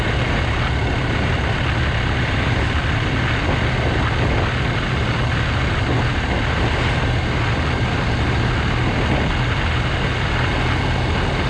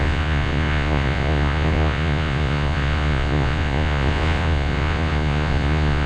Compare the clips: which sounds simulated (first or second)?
second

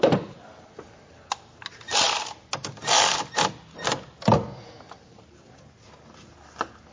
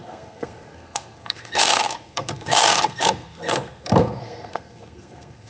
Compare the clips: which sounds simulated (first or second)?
second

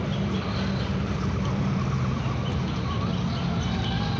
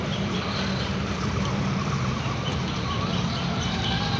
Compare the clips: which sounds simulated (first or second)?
second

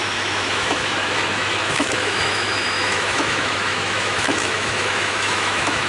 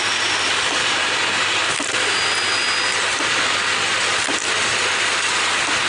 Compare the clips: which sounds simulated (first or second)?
first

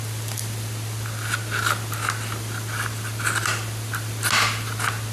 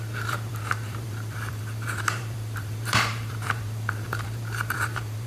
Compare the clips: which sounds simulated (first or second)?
second